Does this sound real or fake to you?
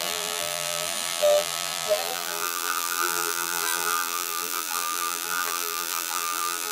fake